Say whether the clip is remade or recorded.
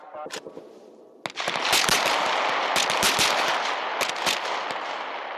recorded